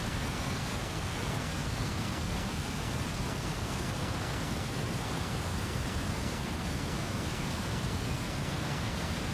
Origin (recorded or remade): remade